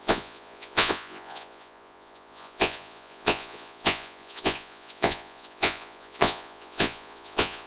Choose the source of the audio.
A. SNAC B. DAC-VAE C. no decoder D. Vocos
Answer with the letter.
D